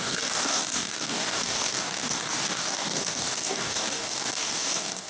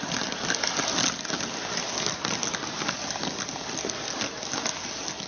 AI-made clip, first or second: first